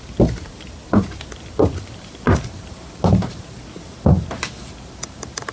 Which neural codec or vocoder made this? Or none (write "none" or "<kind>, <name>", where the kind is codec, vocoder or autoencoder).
none